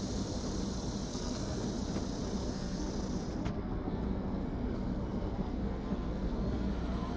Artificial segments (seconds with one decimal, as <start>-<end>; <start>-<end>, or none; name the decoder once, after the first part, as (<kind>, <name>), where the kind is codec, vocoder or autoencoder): 1.1-1.7 (codec, SNAC); 2.4-2.9; 3.4-6.7